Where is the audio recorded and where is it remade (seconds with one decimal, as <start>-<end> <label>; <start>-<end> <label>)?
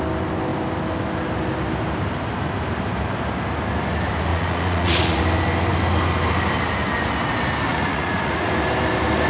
0.0-4.3 recorded; 4.3-5.2 remade; 5.2-7.7 recorded; 7.7-8.5 remade; 8.5-9.3 recorded